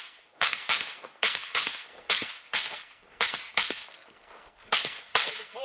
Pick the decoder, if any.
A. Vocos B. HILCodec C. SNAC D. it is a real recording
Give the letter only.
C